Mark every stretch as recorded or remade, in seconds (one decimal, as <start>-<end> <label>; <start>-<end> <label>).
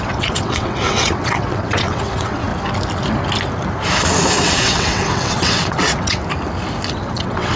0.0-2.5 remade; 2.5-4.4 recorded; 4.4-6.2 remade; 6.2-6.9 recorded; 6.9-7.6 remade